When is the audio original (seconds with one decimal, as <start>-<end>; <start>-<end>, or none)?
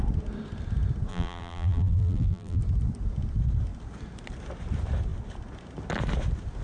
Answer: 0.0-1.1; 2.6-6.6